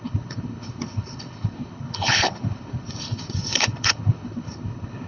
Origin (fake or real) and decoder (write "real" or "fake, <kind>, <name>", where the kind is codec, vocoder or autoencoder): fake, codec, HILCodec